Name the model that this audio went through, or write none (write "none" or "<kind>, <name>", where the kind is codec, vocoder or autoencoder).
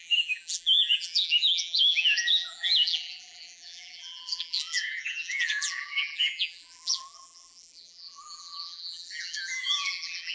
vocoder, BigVGAN v2